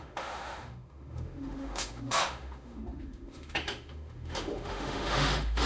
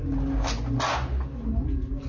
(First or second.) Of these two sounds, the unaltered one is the second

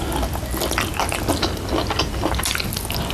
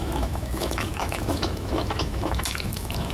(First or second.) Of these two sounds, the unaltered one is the first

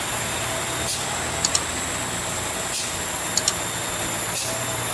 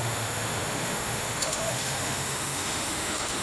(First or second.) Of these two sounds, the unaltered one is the first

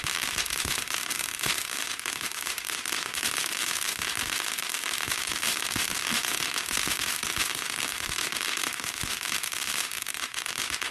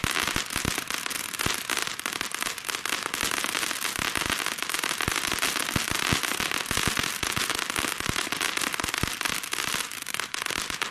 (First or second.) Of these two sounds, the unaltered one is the second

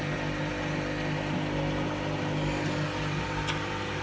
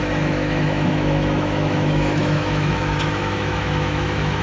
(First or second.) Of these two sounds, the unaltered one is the first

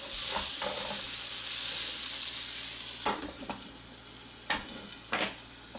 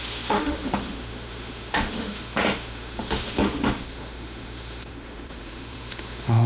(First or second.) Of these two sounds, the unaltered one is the first